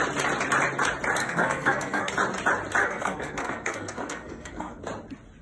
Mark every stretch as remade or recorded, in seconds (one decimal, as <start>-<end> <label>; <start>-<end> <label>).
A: 0.0-1.2 recorded; 1.2-2.1 remade; 2.1-2.8 recorded; 2.8-4.8 remade; 4.8-5.4 recorded